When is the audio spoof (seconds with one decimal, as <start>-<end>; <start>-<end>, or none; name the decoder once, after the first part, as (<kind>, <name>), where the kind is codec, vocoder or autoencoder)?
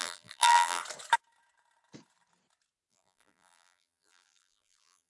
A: 0.0-0.8 (vocoder, BigVGAN v2); 2.9-5.1